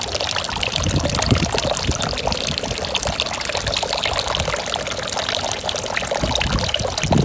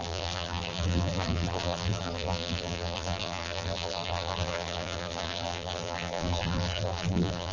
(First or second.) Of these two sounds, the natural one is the first